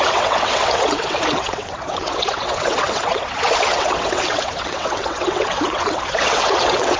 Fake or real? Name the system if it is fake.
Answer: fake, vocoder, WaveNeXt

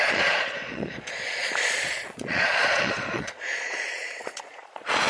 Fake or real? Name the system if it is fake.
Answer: fake, vocoder, Vocos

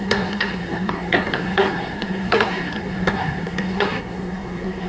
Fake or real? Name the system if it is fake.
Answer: fake, codec, SNAC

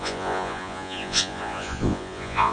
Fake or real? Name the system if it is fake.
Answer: fake, vocoder, Vocos